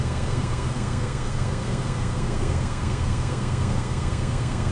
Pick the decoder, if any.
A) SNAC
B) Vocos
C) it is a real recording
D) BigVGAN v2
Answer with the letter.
A